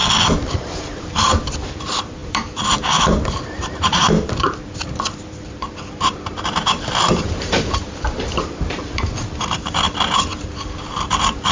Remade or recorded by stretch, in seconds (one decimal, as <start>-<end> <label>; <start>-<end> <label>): 0.0-0.5 recorded; 0.5-11.5 remade